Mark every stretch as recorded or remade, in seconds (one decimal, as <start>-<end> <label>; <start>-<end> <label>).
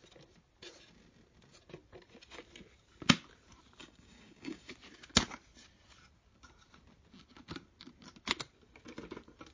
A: 0.0-3.8 recorded; 3.8-4.7 remade; 4.7-9.5 recorded